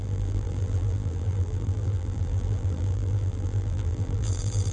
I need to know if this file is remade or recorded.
remade